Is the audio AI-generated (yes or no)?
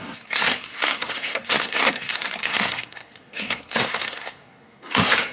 yes